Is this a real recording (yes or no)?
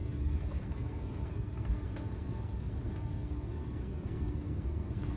no